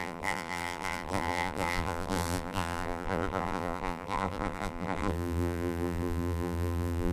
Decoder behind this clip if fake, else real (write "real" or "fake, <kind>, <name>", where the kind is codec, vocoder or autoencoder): fake, vocoder, BigVGAN v2